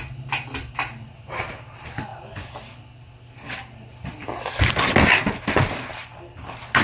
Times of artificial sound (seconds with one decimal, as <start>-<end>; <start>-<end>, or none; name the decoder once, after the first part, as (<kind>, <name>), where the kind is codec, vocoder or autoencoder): none